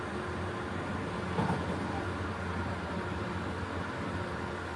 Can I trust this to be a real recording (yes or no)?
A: yes